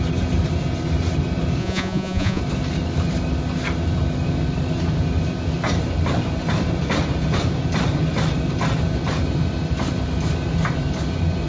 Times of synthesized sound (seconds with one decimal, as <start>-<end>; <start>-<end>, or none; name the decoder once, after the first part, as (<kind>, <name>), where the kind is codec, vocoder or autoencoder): 1.6-2.4 (vocoder, Vocos)